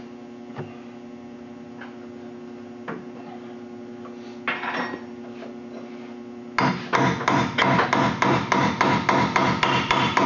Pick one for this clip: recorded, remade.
recorded